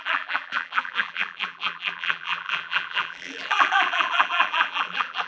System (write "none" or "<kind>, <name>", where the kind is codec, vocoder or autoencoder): vocoder, BigVGAN v2